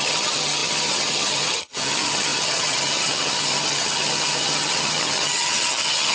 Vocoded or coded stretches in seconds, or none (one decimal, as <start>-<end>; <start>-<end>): 0.0-6.1